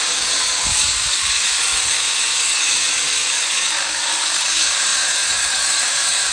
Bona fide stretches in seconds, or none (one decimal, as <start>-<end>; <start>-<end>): none